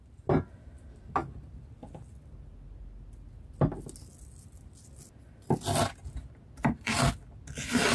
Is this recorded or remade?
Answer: recorded